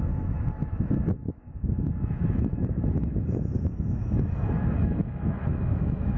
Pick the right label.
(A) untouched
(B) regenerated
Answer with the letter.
B